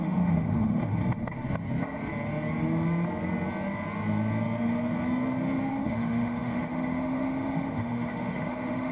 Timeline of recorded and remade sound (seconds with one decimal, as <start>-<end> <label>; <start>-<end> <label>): 0.0-1.0 remade; 1.0-5.7 recorded; 5.7-8.9 remade